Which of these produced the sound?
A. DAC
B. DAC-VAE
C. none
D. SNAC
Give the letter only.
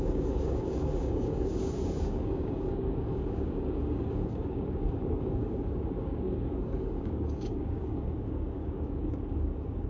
A